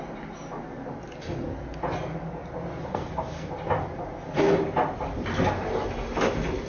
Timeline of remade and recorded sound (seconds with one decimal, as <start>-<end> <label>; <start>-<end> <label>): 0.0-2.9 recorded; 2.9-3.5 remade; 3.5-6.7 recorded